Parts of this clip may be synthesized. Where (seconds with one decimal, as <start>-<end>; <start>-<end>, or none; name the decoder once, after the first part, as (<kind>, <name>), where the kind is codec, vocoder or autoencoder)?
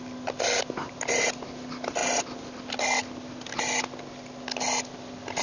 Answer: none